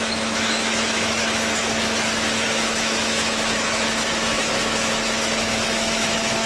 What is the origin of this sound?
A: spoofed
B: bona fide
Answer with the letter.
A